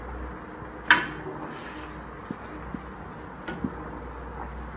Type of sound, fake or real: real